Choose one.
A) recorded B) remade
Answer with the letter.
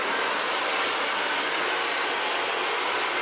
A